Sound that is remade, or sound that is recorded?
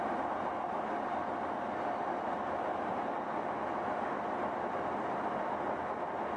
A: recorded